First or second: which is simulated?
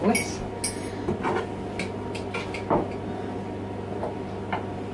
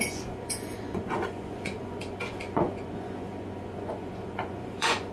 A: second